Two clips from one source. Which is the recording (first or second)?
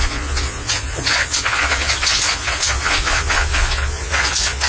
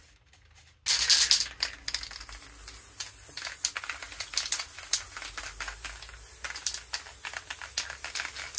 second